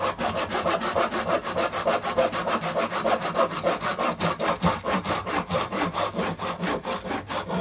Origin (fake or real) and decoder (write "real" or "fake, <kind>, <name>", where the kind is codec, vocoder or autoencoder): real